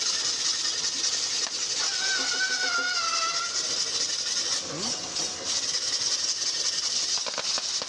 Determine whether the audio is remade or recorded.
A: recorded